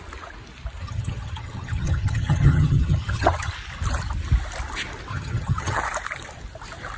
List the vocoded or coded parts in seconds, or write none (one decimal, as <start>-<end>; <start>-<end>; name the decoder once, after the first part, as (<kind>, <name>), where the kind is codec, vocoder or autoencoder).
0.8-3.5 (vocoder, HiFi-GAN); 5.1-5.8